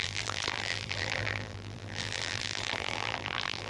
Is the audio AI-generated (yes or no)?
yes